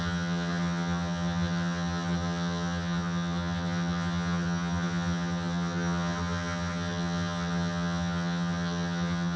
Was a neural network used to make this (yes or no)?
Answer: yes